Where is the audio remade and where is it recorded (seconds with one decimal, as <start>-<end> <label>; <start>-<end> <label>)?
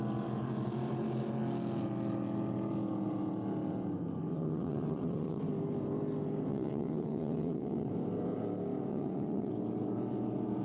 0.0-4.3 recorded; 4.3-5.4 remade; 5.4-6.5 recorded; 6.5-7.9 remade; 7.9-8.9 recorded; 8.9-9.5 remade; 9.5-10.6 recorded